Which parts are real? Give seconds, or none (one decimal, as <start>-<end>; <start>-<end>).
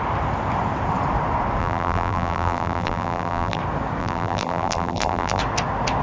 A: 0.0-1.6; 3.6-4.0; 5.4-6.0